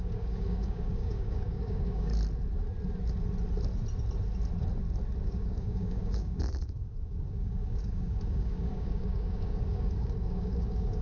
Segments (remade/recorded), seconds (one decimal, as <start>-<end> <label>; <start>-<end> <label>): 0.0-2.1 remade; 2.1-5.2 recorded; 5.2-11.0 remade